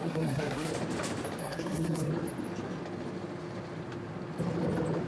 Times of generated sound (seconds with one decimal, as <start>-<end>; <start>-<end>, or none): 0.0-0.7; 1.4-2.1

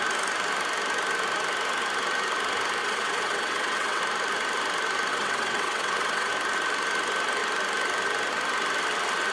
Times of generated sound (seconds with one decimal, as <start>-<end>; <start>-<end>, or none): 2.8-4.0; 5.1-6.3